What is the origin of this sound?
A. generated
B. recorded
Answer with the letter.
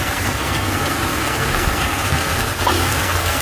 A